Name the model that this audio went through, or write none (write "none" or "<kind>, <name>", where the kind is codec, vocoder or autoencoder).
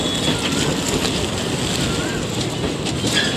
none